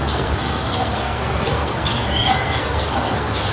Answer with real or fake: fake